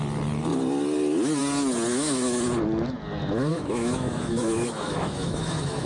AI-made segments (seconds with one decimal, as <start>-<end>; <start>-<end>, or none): 1.9-2.4; 3.5-5.9